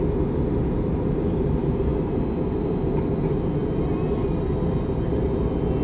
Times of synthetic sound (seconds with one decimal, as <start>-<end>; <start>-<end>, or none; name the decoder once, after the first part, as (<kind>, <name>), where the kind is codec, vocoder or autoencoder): none